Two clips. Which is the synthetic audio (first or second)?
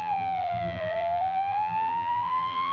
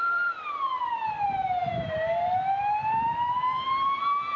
first